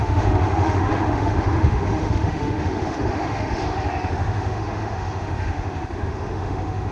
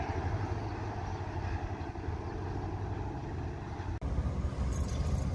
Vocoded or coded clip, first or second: first